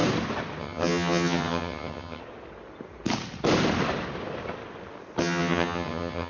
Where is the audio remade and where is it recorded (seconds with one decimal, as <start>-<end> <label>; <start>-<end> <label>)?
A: 0.0-0.6 recorded; 0.6-2.2 remade; 2.2-5.2 recorded; 5.2-6.3 remade